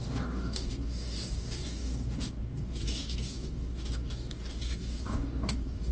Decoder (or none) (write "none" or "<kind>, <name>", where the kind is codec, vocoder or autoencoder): codec, DAC